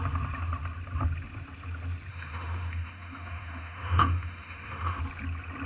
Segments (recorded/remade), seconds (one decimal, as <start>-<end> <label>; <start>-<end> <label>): 0.0-2.1 recorded; 2.1-5.0 remade; 5.0-5.7 recorded